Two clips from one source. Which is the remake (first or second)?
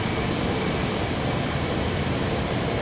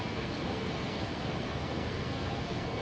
second